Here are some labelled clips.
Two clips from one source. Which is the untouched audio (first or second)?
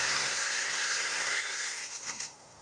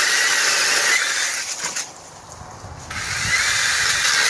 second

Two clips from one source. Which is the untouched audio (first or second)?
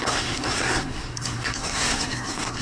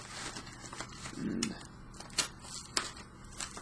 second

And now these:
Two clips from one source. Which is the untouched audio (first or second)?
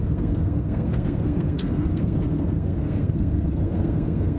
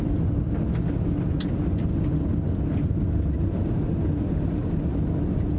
second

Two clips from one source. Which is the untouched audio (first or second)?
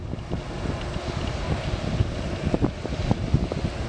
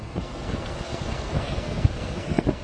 first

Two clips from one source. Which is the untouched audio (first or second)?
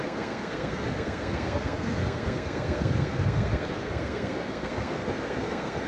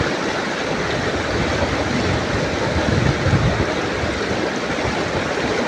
second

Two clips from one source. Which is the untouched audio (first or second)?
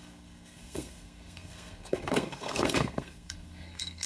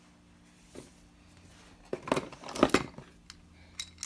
second